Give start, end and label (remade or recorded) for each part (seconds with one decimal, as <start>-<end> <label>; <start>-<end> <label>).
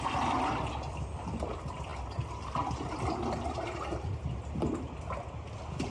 0.0-5.9 recorded